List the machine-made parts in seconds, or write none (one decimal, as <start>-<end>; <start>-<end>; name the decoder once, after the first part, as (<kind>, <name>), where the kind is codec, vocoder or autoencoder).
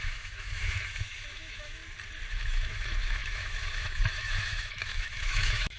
0.0-1.8 (autoencoder, DAC-VAE); 2.3-5.8